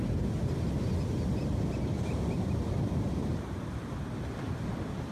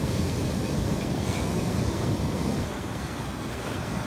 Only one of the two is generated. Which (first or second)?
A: second